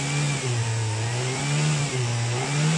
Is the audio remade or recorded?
recorded